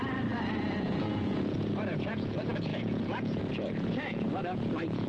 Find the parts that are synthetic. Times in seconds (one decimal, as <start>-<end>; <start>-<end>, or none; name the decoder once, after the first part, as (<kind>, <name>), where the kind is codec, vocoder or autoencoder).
0.5-5.1 (vocoder, Vocos)